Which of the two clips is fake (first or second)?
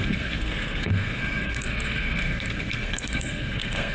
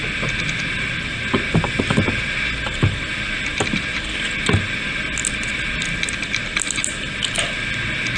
first